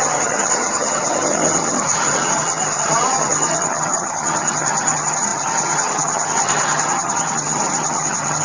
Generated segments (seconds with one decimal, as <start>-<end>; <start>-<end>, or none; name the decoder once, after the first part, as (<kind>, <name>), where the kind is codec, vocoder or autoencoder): 0.0-8.4 (vocoder, HiFi-GAN)